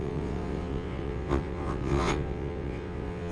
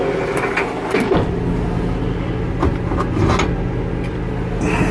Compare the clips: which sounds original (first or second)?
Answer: second